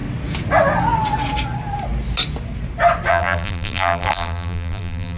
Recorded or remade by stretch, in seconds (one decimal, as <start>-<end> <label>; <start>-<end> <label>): 0.0-3.1 recorded; 3.1-5.2 remade